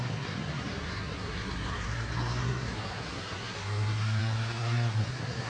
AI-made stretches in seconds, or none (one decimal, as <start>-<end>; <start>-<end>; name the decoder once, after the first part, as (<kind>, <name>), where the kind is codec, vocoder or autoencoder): 0.0-5.5 (codec, SNAC)